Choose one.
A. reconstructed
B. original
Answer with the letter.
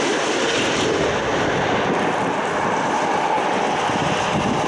B